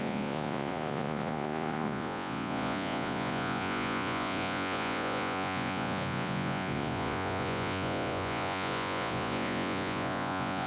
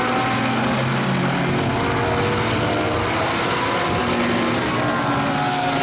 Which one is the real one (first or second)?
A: second